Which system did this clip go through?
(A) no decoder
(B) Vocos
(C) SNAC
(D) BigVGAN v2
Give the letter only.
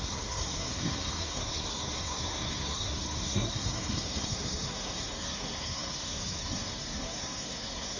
C